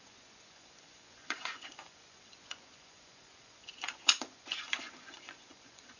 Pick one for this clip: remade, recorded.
remade